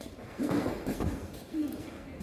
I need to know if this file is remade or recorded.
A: remade